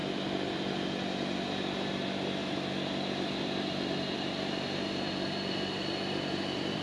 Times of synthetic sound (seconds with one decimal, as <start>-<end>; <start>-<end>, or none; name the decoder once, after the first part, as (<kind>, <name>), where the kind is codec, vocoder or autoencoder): 0.0-0.6 (vocoder, BigVGAN v2); 2.4-6.8